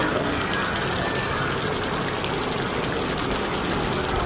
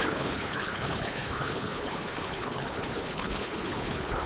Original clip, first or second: first